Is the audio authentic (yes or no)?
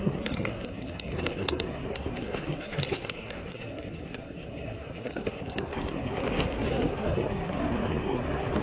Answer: no